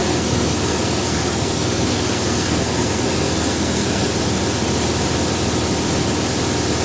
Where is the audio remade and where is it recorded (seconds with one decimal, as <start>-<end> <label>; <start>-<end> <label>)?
0.0-4.1 remade; 4.1-6.8 recorded